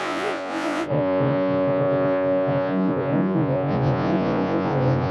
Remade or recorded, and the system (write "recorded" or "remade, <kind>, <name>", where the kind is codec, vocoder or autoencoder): remade, vocoder, Vocos